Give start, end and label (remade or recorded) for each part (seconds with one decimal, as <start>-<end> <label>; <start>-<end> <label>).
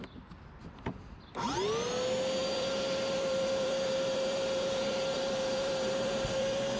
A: 0.0-2.4 recorded; 2.4-6.8 remade